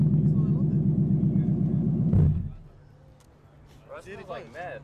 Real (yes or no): yes